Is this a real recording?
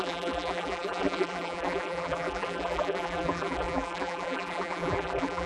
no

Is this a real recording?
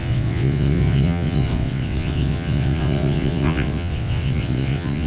no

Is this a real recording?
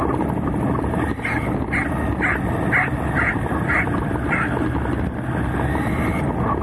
yes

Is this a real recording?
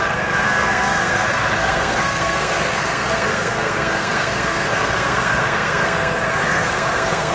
no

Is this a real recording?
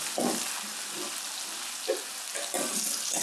yes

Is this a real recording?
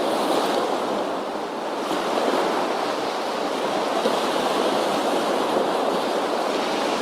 yes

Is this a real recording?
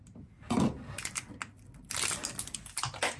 yes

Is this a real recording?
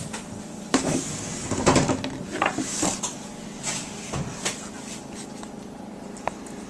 yes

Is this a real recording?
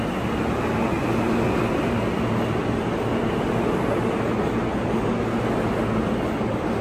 yes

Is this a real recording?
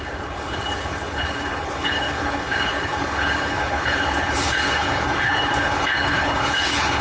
no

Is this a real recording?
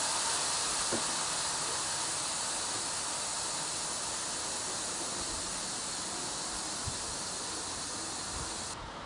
yes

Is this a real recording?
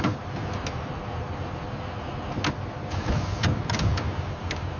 yes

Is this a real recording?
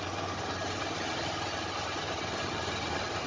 yes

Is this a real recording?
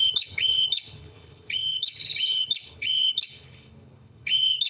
no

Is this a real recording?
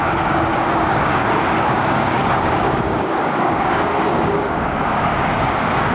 no